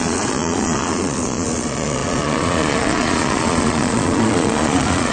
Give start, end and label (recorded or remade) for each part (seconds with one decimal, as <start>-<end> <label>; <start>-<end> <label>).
0.0-5.1 remade